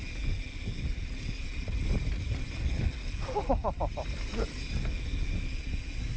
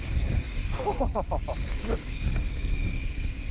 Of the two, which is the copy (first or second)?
second